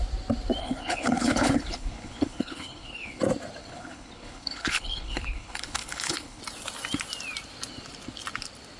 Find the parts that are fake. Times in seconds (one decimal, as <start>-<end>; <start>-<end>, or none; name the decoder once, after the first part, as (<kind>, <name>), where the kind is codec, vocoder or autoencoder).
0.6-3.2 (codec, HILCodec); 3.6-6.4